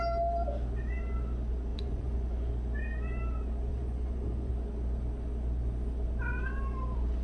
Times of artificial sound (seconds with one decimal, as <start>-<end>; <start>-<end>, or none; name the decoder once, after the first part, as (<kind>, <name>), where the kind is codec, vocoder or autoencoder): 1.7-2.5 (vocoder, Vocos); 3.7-4.5